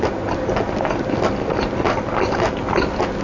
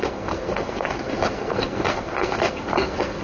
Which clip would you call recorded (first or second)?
first